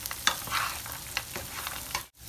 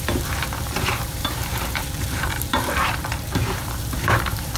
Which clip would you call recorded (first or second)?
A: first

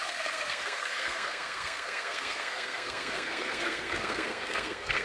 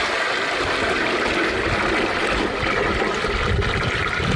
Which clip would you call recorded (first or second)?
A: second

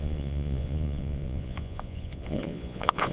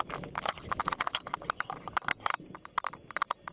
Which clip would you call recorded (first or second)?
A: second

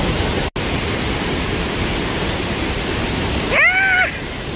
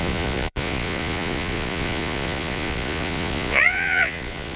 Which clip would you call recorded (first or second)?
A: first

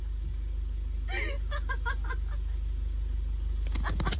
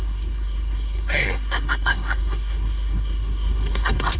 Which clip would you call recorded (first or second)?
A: first